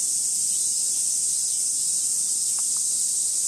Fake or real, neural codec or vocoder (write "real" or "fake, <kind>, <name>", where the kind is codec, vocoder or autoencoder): real